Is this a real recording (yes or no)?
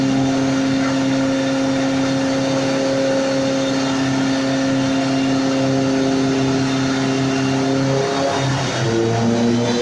yes